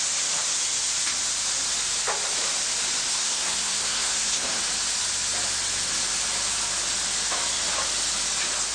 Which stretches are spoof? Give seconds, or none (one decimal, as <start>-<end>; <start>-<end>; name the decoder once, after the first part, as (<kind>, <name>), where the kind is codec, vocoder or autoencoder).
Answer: 3.1-4.6 (codec, SNAC)